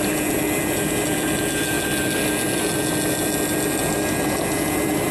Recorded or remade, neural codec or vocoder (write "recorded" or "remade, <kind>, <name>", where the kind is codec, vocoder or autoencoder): recorded